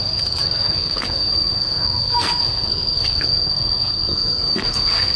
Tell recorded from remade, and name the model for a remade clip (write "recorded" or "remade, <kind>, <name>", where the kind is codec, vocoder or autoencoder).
remade, codec, SNAC